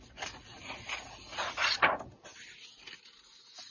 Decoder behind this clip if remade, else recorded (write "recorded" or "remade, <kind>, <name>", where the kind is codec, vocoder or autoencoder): recorded